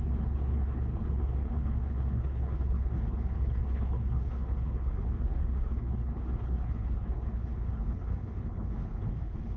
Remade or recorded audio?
remade